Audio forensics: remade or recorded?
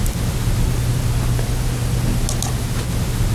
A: recorded